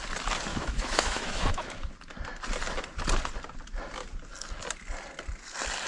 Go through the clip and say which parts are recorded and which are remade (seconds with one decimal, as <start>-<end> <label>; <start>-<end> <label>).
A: 0.0-0.5 recorded; 0.5-1.9 remade; 1.9-5.9 recorded

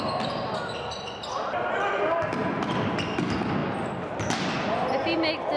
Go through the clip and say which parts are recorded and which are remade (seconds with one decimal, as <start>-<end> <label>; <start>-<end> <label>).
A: 0.0-5.6 recorded

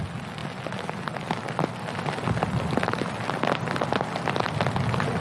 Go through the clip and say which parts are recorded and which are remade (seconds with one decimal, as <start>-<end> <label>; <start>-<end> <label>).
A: 0.0-5.2 recorded